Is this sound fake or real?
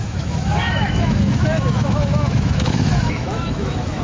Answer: fake